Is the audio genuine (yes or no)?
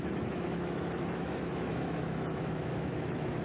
no